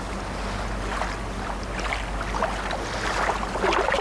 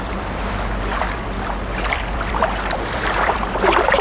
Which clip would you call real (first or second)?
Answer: first